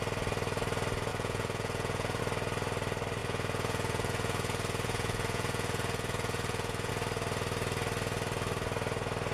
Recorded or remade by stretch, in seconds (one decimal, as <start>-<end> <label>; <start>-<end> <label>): 0.0-1.1 recorded; 1.1-2.2 remade; 2.2-3.2 recorded; 3.2-6.9 remade; 6.9-9.3 recorded